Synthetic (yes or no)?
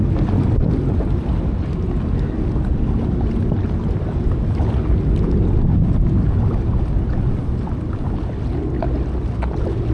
no